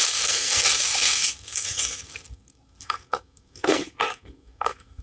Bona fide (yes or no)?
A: no